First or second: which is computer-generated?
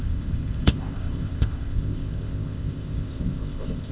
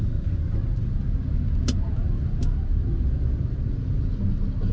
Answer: first